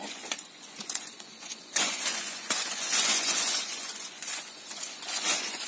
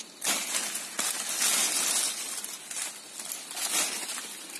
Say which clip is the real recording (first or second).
second